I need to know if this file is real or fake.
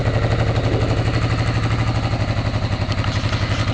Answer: real